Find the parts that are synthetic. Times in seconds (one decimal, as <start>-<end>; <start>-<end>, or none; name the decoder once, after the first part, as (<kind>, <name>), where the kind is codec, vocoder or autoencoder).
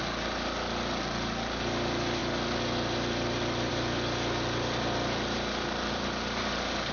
none